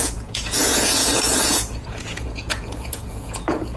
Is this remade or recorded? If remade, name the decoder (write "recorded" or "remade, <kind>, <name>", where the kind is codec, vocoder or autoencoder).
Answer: remade, vocoder, Vocos